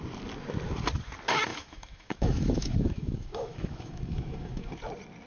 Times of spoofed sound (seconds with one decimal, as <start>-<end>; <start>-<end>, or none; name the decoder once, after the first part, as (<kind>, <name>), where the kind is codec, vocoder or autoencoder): 1.5-4.7 (autoencoder, DAC-VAE)